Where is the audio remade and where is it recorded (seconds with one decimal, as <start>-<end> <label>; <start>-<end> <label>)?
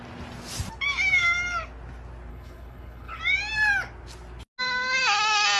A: 0.0-2.3 recorded; 2.3-3.2 remade; 3.2-5.6 recorded